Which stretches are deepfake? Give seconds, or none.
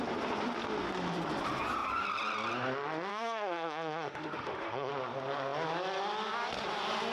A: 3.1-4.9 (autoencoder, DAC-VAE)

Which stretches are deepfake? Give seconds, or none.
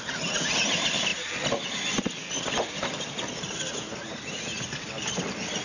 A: none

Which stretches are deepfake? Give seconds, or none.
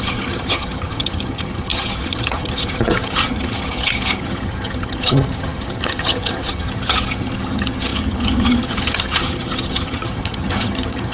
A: 0.0-11.1 (vocoder, HiFi-GAN)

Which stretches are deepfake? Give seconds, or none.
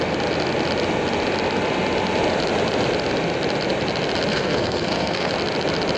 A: 4.3-5.3 (codec, SNAC)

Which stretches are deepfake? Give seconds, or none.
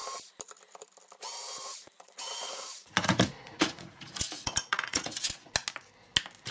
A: 1.6-5.5 (vocoder, Vocos)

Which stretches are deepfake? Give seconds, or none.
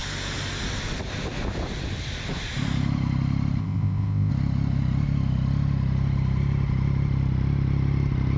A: 3.6-4.3 (codec, ZipCodec)